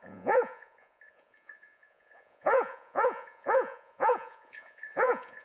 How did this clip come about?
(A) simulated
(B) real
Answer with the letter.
A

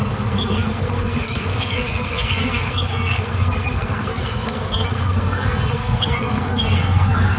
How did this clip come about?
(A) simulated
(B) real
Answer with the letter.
A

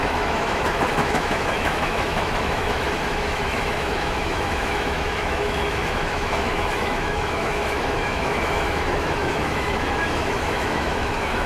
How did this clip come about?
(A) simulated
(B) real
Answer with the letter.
A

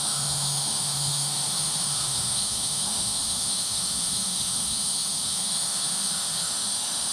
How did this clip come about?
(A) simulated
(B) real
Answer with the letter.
A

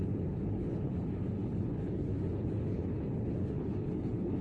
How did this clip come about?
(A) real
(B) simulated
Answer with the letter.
B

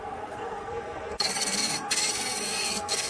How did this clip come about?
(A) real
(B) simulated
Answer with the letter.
B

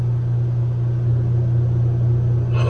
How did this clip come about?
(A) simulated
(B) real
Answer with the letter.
B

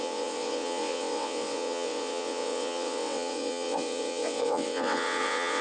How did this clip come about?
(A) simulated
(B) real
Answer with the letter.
A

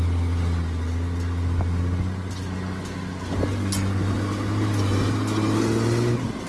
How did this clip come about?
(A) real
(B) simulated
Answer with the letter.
A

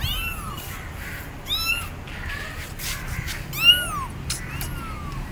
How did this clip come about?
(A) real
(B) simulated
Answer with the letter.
A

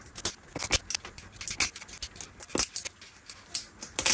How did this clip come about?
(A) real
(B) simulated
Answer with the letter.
A